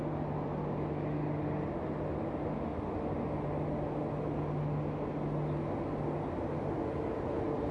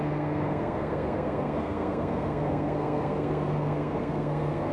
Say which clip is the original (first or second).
first